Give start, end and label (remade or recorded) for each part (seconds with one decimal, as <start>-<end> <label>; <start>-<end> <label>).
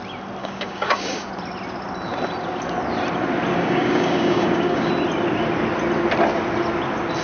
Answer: 0.0-0.4 recorded; 0.4-1.3 remade; 1.3-3.5 recorded; 3.5-4.9 remade; 4.9-7.2 recorded